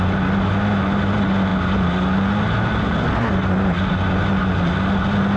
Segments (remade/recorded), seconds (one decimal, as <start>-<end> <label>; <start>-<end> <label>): 0.0-5.4 recorded